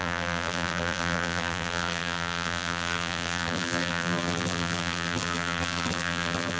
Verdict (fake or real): fake